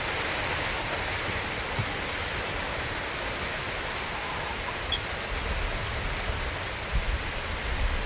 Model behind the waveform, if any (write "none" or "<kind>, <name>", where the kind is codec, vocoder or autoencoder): none